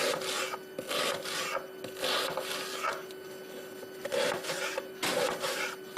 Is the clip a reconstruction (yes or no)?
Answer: no